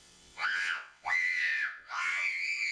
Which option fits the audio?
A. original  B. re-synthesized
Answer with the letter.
B